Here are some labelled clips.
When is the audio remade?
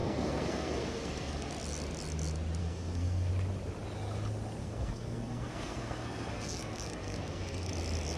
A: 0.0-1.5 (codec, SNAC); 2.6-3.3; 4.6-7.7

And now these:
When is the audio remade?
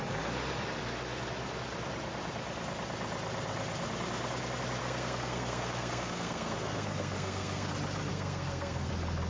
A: 4.8-7.7 (codec, SNAC); 8.1-8.9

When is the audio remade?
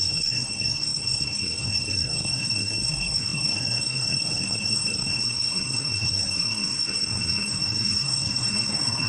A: 0.0-9.1 (codec, SNAC)